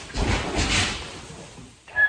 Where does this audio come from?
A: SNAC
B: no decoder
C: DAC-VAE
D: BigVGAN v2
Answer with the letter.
D